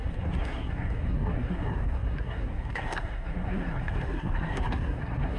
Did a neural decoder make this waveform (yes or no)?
yes